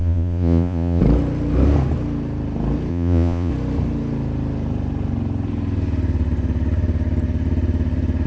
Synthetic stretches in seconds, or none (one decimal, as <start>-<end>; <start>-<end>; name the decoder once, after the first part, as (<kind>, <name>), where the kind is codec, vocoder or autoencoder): 0.0-1.0 (vocoder, Vocos); 2.9-3.5

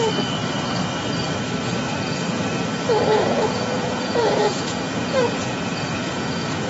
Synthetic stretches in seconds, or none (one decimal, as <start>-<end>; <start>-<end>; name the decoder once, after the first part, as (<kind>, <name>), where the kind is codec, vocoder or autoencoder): 3.1-6.7 (vocoder, Vocos)